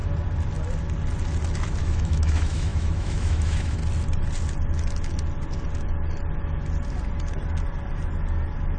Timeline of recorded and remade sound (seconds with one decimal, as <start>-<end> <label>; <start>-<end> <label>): 0.0-1.8 recorded; 1.8-3.8 remade; 3.8-8.8 recorded